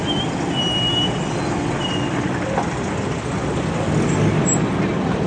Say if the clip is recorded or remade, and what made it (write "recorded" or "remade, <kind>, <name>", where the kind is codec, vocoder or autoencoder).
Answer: recorded